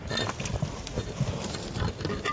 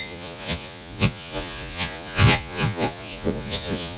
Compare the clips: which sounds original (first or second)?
first